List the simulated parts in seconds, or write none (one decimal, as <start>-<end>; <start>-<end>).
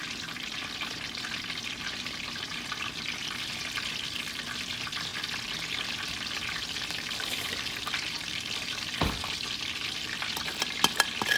0.0-5.1; 6.0-11.4